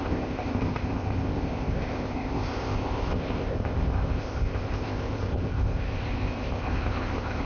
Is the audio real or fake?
fake